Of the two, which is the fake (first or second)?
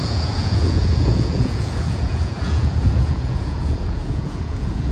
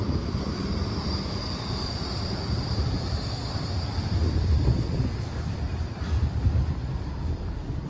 first